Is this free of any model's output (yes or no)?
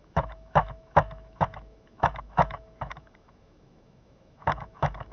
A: no